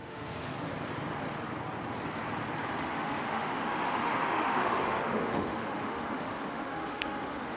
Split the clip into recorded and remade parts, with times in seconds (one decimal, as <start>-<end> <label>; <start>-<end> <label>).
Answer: 0.0-0.5 remade; 0.5-2.8 recorded; 2.8-7.6 remade